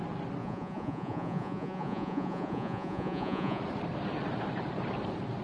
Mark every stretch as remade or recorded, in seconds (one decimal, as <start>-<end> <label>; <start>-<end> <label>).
0.0-0.4 recorded; 0.4-3.6 remade; 3.6-5.4 recorded